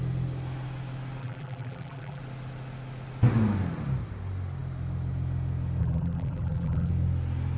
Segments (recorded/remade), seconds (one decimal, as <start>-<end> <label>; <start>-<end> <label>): 0.0-1.2 recorded; 1.2-2.2 remade; 2.2-5.8 recorded; 5.8-6.9 remade; 6.9-7.6 recorded